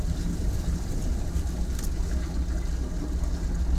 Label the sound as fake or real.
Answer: real